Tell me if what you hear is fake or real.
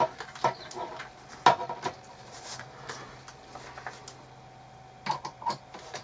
real